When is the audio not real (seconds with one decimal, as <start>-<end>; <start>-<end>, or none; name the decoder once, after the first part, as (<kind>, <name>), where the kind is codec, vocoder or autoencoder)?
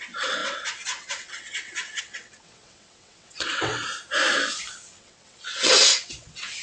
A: 0.0-3.7 (vocoder, WaveNeXt); 4.7-6.6